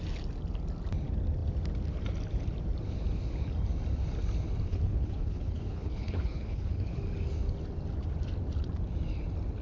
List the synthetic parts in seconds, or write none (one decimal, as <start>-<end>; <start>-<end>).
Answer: 4.7-7.0